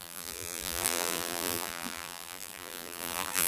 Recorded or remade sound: remade